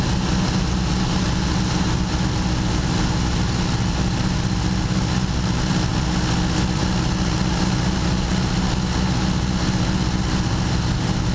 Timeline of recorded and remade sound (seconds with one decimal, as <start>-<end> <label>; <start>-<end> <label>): 0.0-11.3 recorded